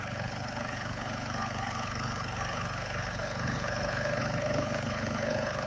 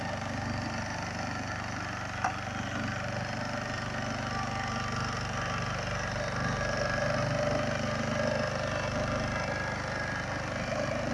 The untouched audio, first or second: second